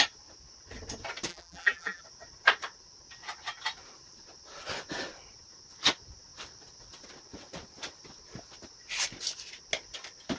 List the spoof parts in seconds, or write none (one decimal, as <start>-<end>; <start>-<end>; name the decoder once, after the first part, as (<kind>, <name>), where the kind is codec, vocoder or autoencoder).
1.3-2.0 (vocoder, BigVGAN v2)